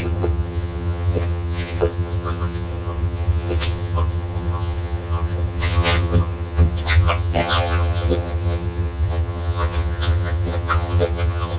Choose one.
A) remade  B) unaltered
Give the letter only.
A